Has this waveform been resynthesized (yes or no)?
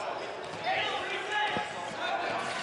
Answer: no